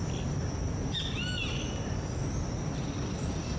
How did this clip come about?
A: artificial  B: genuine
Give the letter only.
B